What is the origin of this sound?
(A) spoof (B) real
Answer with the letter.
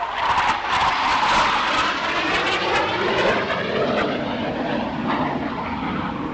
B